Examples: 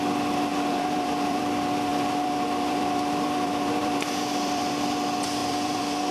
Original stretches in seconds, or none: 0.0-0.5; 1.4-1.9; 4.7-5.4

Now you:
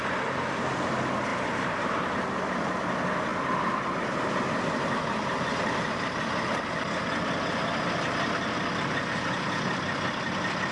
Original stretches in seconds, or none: 0.0-1.3; 2.0-5.5; 6.2-10.7

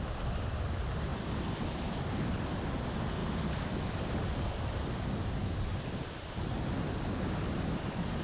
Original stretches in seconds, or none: 1.1-2.2; 3.2-4.4